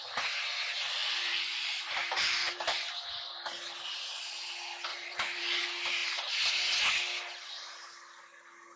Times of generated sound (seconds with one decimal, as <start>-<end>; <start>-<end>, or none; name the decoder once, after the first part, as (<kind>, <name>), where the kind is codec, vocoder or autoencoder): 1.0-3.0 (vocoder, BigVGAN v2); 4.9-5.6